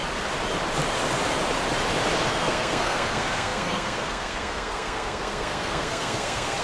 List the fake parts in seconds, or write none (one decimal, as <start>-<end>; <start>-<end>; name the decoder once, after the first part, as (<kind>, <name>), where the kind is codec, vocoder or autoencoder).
2.3-6.6 (codec, SNAC)